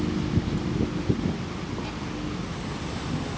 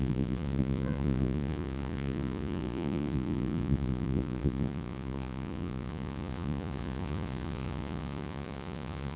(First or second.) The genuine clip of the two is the first